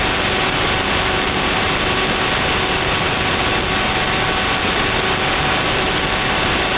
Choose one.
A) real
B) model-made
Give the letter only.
A